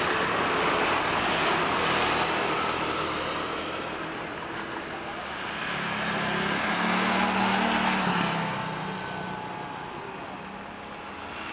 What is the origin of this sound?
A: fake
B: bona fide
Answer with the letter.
B